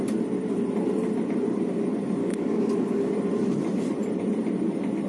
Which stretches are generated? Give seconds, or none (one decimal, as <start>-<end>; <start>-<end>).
2.2-3.1